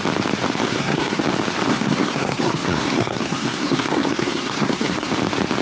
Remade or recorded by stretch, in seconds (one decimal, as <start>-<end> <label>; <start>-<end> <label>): 0.0-0.6 recorded; 0.6-1.2 remade; 1.2-1.7 recorded; 1.7-5.1 remade; 5.1-5.6 recorded